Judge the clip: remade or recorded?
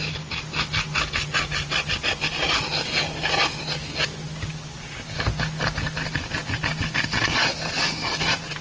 recorded